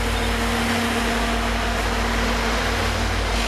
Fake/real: real